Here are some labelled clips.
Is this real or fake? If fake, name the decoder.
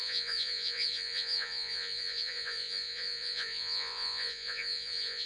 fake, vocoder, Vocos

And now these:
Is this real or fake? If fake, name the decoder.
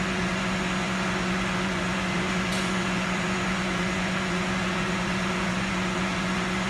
fake, vocoder, Vocos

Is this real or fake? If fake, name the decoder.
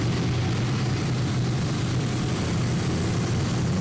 real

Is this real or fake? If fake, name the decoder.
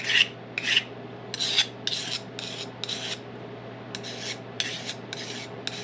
real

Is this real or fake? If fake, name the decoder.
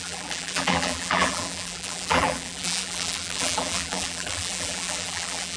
fake, vocoder, BigVGAN v2